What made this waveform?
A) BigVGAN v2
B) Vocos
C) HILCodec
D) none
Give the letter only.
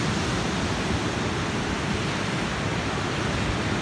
D